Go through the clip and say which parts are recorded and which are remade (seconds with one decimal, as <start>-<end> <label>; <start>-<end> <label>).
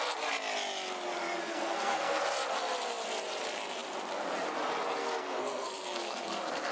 0.0-1.4 recorded; 1.4-2.2 remade; 2.2-5.0 recorded; 5.0-6.7 remade